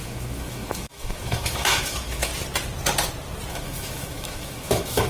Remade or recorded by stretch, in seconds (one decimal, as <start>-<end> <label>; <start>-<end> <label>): 0.0-2.3 remade; 2.3-3.5 recorded; 3.5-5.1 remade